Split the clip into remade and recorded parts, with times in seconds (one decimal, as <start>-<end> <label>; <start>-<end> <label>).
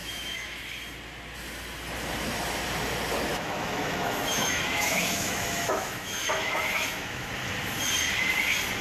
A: 0.0-0.6 remade; 0.6-3.3 recorded; 3.3-7.3 remade; 7.3-8.8 recorded